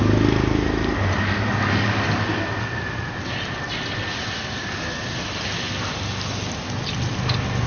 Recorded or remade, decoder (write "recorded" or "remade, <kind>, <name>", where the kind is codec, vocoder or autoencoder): recorded